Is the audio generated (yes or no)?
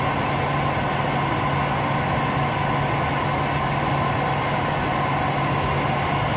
no